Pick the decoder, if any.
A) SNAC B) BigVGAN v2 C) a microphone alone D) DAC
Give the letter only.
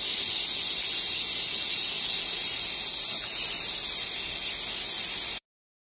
C